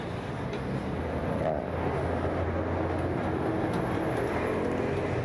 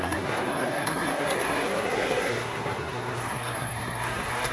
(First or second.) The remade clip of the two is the second